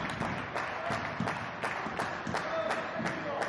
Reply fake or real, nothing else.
real